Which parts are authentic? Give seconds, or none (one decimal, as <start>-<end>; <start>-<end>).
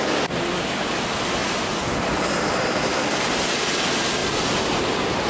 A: 0.0-5.3